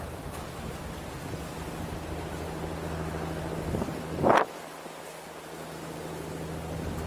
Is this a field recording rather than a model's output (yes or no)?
yes